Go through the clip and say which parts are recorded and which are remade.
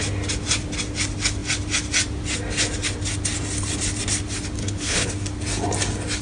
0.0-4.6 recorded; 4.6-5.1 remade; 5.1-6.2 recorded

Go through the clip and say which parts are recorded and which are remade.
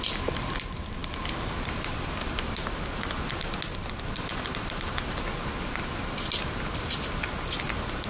0.0-8.1 recorded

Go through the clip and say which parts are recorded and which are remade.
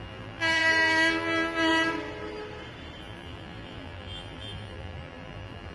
0.0-1.7 remade; 1.7-3.0 recorded; 3.0-5.7 remade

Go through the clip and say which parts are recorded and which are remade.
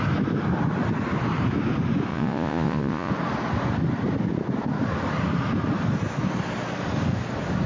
0.0-2.1 recorded; 2.1-3.1 remade; 3.1-7.7 recorded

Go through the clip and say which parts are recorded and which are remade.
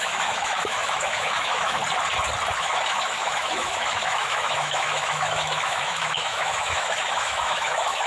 0.0-1.8 remade; 1.8-2.6 recorded; 2.6-8.1 remade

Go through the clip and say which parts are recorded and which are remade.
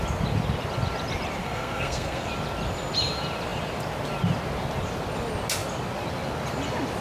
0.0-1.4 recorded; 1.4-2.3 remade; 2.3-7.0 recorded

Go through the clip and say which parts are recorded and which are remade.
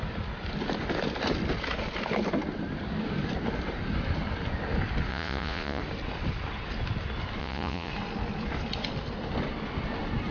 0.0-5.1 recorded; 5.1-5.8 remade; 5.8-7.4 recorded; 7.4-7.9 remade; 7.9-10.3 recorded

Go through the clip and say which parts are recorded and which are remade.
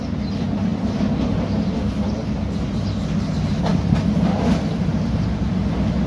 0.0-6.1 recorded